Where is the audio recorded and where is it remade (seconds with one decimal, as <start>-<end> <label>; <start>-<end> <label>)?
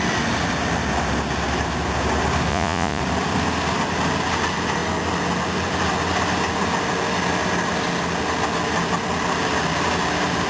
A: 0.0-2.5 recorded; 2.5-3.0 remade; 3.0-10.5 recorded